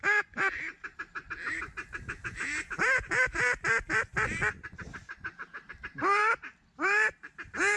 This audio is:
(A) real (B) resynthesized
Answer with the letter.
B